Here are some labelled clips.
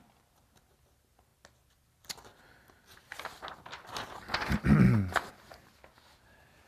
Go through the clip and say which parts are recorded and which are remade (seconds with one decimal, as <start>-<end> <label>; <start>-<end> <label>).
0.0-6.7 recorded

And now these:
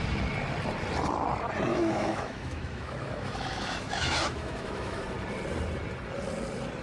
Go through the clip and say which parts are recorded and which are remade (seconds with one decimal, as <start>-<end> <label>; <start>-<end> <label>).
0.0-1.7 recorded; 1.7-5.0 remade; 5.0-6.8 recorded

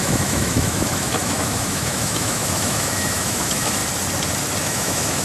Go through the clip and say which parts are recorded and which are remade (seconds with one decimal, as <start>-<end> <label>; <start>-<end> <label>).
0.0-3.8 remade; 3.8-4.6 recorded; 4.6-5.2 remade